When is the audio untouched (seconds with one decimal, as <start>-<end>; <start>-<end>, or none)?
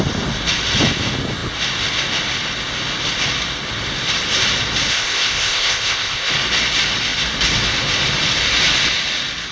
0.0-4.9; 6.3-9.5